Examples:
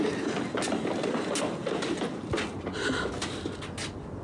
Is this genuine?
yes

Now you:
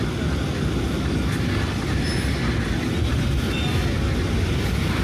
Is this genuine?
yes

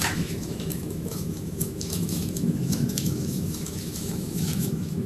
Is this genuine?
no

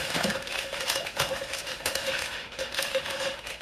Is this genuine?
no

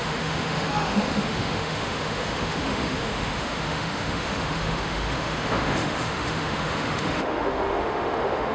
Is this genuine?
no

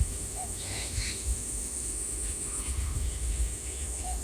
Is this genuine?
no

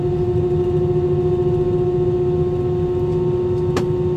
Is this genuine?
yes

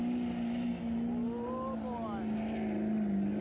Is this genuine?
yes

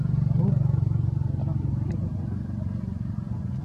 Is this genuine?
yes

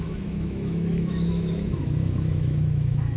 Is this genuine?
no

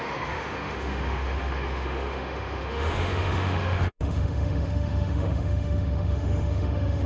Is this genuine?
no